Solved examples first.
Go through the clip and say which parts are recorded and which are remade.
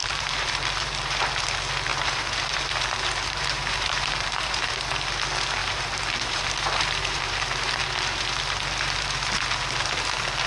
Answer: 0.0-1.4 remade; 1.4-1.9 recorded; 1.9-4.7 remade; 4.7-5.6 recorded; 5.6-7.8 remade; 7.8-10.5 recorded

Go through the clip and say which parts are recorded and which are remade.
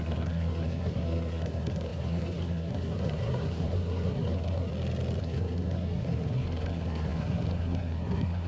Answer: 0.0-4.7 remade; 4.7-5.2 recorded; 5.2-8.5 remade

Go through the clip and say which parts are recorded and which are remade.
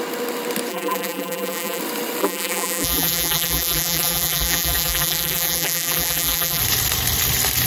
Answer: 0.0-0.7 recorded; 0.7-1.8 remade; 1.8-2.2 recorded; 2.2-6.6 remade; 6.6-7.7 recorded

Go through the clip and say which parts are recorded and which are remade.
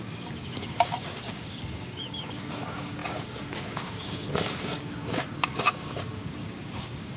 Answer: 0.0-7.2 remade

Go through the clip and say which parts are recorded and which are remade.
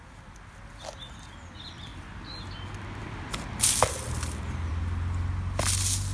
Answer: 0.0-6.1 recorded